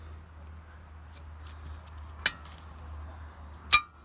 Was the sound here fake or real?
real